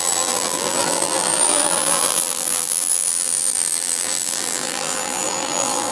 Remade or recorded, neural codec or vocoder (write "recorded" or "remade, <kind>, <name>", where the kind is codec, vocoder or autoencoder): remade, vocoder, BigVGAN v2